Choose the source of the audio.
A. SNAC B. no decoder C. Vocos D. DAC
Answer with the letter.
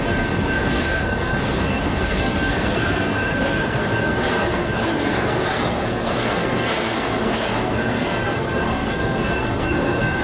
A